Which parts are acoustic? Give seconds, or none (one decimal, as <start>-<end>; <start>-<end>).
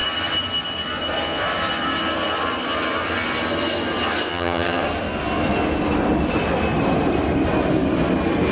0.0-4.3; 4.8-8.5